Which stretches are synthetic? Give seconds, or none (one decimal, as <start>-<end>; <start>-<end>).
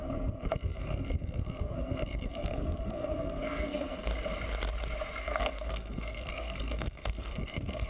0.0-4.1; 5.2-7.9